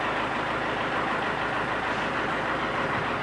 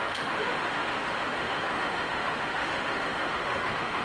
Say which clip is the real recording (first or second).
first